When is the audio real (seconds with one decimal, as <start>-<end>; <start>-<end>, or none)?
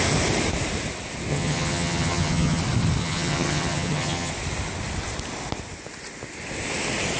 0.0-1.3; 2.6-3.0; 4.3-7.2